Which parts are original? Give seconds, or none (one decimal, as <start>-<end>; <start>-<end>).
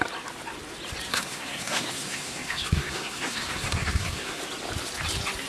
0.0-1.1; 4.4-5.5